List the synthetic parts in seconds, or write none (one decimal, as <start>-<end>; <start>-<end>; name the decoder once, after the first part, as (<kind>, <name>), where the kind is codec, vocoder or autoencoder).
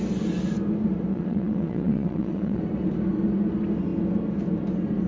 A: 1.1-2.6 (vocoder, WaveNeXt)